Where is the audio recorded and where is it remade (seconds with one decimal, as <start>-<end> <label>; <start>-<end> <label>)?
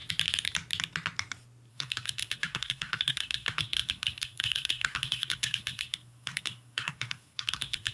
0.0-1.7 recorded; 1.7-7.9 remade